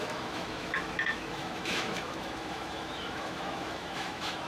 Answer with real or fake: fake